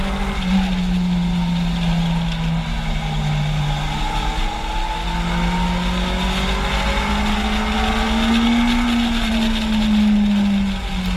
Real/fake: real